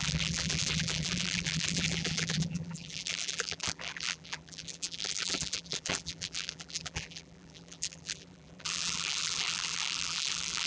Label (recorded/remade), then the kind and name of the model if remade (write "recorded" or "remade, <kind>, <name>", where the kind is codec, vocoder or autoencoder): remade, vocoder, BigVGAN v2